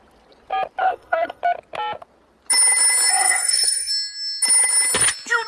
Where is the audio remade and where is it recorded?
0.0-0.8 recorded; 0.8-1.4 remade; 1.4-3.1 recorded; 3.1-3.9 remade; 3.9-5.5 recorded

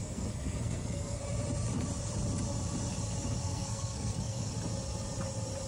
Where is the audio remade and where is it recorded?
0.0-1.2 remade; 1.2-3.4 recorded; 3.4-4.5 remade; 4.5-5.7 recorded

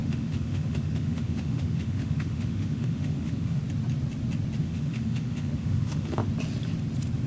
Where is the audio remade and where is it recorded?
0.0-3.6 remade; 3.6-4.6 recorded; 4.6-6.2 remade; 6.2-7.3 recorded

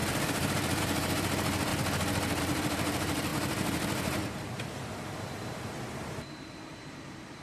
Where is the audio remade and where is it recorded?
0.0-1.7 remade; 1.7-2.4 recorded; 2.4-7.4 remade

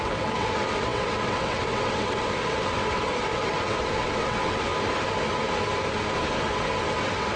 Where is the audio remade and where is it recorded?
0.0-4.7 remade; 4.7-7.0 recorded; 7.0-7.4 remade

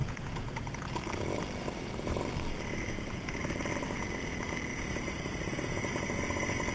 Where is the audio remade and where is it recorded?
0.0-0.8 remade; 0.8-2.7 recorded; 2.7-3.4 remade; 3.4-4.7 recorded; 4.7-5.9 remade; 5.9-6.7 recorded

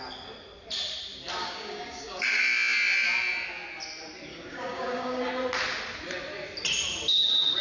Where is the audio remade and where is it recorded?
0.0-1.4 recorded; 1.4-2.4 remade; 2.4-4.3 recorded; 4.3-5.3 remade; 5.3-7.6 recorded

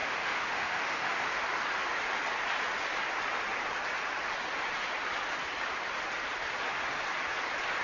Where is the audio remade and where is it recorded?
0.0-1.4 remade; 1.4-7.8 recorded